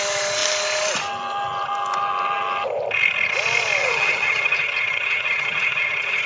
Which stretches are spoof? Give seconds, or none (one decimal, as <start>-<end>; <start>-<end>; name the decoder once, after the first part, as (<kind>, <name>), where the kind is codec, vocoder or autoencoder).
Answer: 3.8-6.3 (vocoder, HiFi-GAN)